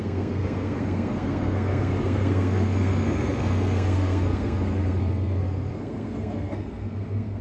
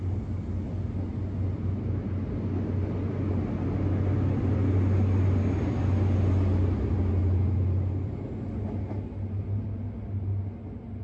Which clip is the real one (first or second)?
second